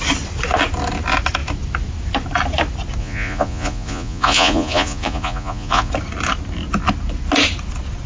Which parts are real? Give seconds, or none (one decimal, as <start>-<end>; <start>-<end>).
0.0-3.0; 5.9-8.1